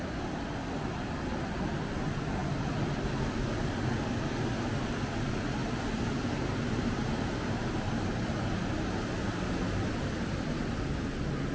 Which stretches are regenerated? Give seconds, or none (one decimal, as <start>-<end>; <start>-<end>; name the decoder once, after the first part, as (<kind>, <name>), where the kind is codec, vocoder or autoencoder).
5.6-7.4 (vocoder, BigVGAN v2)